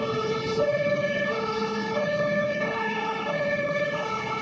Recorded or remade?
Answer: remade